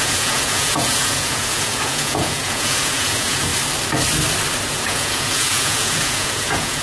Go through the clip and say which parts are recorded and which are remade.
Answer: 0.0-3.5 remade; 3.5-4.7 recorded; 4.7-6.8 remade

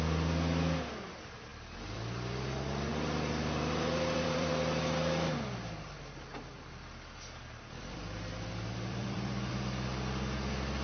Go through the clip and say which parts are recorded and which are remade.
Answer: 0.0-2.9 recorded; 2.9-4.5 remade; 4.5-7.8 recorded; 7.8-9.5 remade; 9.5-10.8 recorded

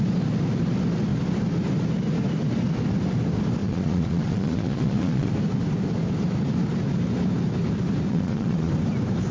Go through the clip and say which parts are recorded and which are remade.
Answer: 0.0-3.6 recorded; 3.6-5.3 remade; 5.3-8.1 recorded; 8.1-8.7 remade; 8.7-9.3 recorded